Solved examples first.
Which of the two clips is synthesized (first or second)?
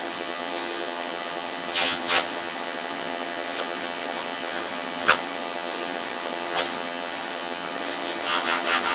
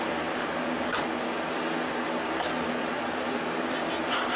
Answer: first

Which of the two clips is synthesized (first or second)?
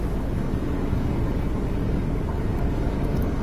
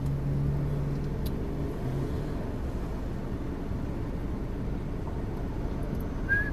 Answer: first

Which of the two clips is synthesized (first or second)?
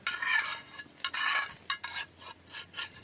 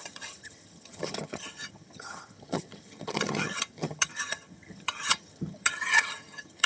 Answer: second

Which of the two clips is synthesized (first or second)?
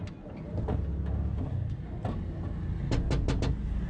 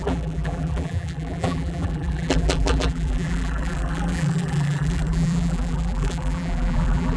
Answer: second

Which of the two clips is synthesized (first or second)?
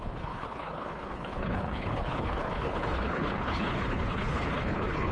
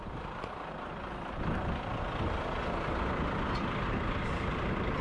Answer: first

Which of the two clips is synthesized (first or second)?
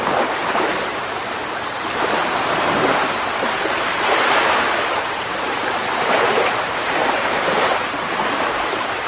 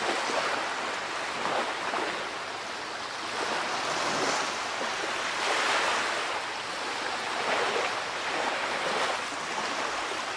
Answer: first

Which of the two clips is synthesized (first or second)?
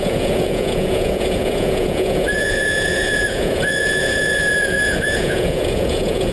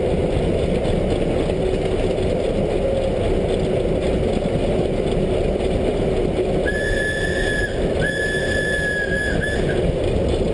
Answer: first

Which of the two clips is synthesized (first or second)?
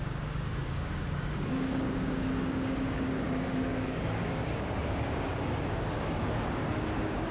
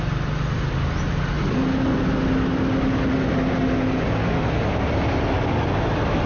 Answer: first